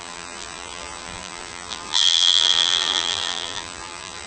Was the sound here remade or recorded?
remade